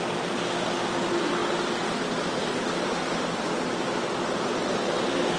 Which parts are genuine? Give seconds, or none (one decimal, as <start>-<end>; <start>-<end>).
0.0-5.4